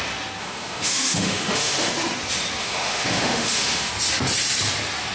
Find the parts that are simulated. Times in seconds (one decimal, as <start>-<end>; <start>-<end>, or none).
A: 0.4-1.9; 2.6-3.9